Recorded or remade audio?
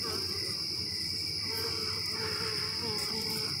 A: recorded